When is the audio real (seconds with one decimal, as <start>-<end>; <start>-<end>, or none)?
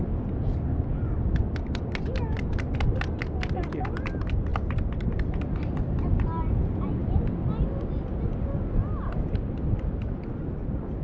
0.0-11.0